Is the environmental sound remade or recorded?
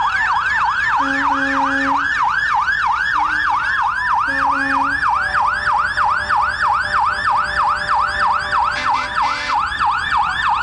recorded